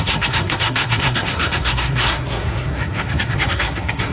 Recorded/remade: remade